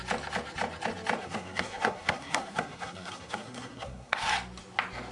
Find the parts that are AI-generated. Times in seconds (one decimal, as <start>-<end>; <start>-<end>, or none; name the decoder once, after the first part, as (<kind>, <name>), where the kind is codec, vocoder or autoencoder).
1.2-4.3 (codec, SNAC)